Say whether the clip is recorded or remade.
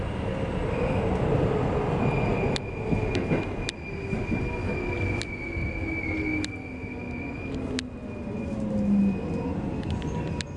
recorded